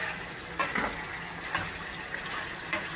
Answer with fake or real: real